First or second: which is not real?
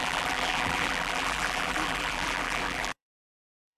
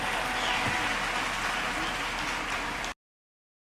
first